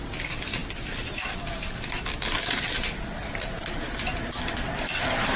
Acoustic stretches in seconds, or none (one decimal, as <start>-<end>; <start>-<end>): 0.0-5.4